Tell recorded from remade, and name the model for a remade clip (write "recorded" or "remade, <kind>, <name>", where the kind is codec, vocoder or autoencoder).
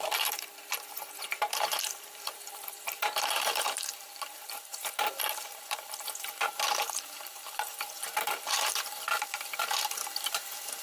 remade, vocoder, BigVGAN v2